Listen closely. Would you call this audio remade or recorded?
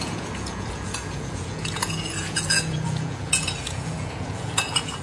remade